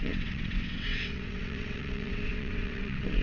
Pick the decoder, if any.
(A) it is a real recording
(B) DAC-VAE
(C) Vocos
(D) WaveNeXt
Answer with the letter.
D